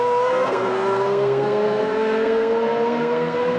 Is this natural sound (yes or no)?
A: no